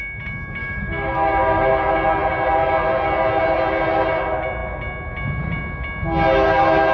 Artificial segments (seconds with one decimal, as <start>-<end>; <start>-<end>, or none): 0.6-1.9